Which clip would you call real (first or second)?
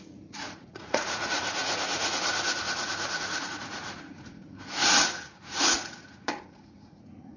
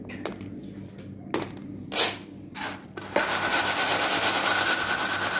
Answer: second